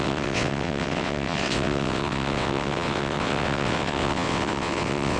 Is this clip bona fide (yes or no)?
no